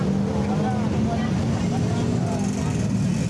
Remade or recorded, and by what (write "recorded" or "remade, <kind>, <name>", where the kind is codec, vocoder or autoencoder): recorded